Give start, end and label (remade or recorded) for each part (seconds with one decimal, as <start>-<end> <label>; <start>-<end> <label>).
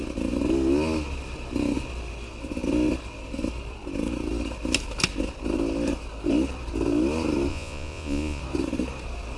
0.0-7.5 recorded; 7.5-8.4 remade; 8.4-9.4 recorded